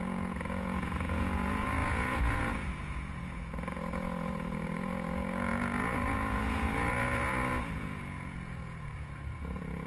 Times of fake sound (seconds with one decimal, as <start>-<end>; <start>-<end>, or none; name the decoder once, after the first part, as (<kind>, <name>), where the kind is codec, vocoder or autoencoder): 0.0-9.9 (vocoder, Vocos)